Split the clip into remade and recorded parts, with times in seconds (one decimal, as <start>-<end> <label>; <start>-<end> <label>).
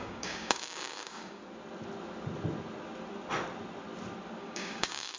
0.0-1.4 remade; 1.4-4.4 recorded; 4.4-5.2 remade